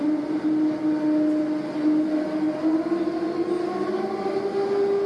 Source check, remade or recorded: recorded